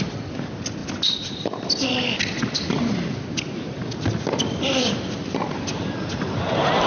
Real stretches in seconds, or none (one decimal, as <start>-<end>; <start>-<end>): 0.0-6.9